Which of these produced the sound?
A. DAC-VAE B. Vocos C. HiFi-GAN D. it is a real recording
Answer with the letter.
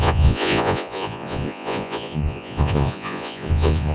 B